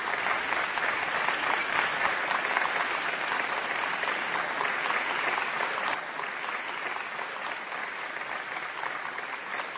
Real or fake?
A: real